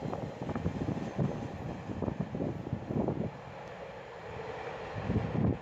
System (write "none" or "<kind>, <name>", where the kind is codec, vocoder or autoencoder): none